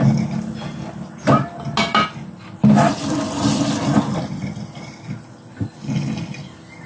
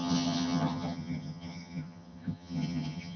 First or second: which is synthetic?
second